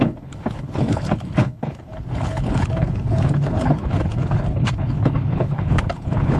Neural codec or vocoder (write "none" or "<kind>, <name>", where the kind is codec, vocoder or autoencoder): codec, HILCodec